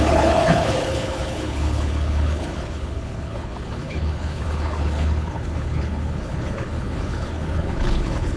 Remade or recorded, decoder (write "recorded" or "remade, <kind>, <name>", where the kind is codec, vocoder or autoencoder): remade, codec, HILCodec